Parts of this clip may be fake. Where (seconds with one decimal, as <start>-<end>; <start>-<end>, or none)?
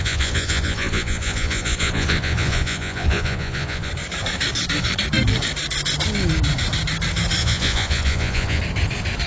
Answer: 0.0-3.9; 7.4-8.6